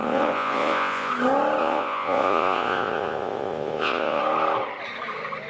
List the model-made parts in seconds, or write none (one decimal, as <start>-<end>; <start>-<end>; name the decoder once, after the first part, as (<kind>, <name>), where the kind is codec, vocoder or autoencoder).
0.0-1.1 (vocoder, Vocos); 1.6-4.2